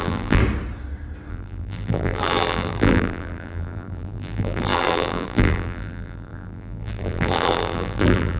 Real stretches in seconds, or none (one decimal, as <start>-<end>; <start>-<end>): 0.4-1.3